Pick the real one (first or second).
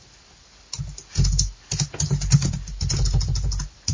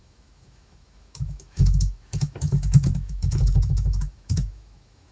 first